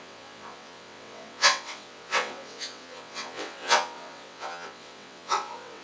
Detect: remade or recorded remade